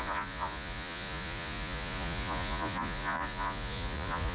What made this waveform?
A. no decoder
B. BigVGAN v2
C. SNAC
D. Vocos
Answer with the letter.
D